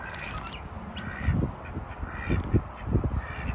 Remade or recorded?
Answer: recorded